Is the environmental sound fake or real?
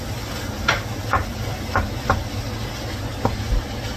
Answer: real